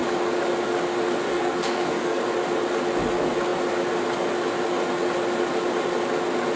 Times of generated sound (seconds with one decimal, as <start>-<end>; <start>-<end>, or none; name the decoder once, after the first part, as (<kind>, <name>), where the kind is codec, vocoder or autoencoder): 1.3-2.2 (codec, SNAC)